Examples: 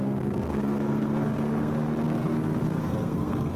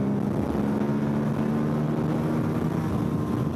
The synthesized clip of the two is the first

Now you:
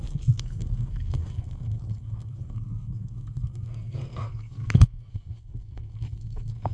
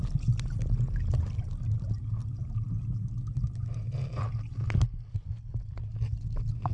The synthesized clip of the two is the first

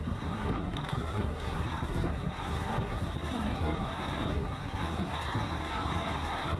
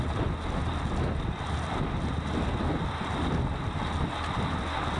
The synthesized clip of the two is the first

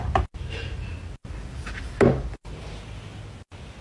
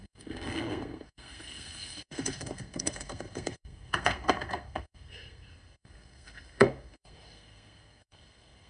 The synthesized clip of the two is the second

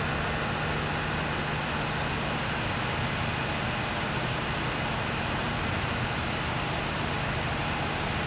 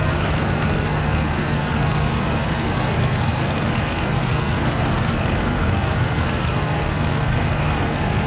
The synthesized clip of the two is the second